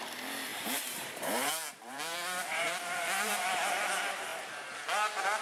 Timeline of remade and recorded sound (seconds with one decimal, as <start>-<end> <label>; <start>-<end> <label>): 0.0-0.5 recorded; 0.5-3.7 remade; 3.7-5.4 recorded